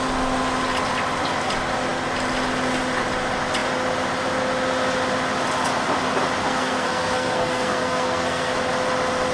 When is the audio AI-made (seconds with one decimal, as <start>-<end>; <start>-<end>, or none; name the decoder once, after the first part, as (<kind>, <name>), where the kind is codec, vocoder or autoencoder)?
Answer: 6.4-8.5 (codec, SNAC)